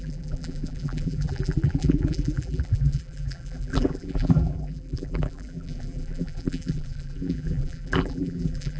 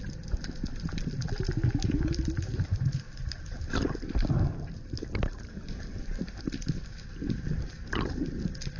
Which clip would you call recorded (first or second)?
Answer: second